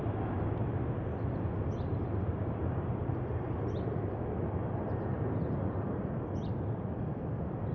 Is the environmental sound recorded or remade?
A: recorded